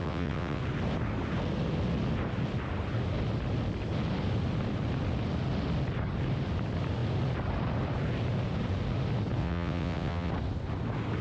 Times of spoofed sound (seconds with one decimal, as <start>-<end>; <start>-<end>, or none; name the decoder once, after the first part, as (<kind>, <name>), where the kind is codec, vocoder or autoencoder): 0.0-0.6 (vocoder, WaveNeXt); 9.4-10.3